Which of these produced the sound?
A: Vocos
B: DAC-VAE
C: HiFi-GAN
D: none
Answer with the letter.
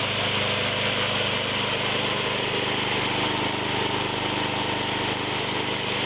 D